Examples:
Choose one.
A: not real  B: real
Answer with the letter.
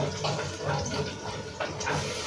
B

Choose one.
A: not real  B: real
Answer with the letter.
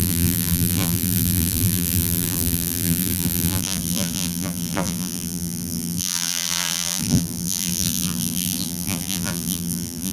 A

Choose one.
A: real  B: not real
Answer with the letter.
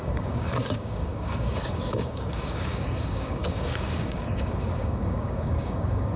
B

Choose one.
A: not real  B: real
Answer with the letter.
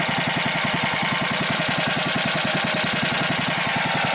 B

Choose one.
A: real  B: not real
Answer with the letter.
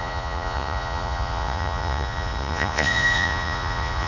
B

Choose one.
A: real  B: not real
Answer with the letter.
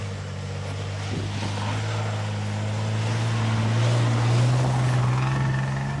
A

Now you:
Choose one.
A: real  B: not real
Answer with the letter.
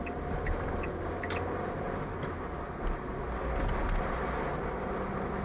A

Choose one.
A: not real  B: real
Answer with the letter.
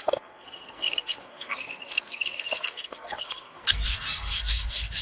A